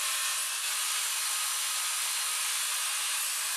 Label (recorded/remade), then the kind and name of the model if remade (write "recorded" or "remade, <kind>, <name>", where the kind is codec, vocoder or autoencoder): recorded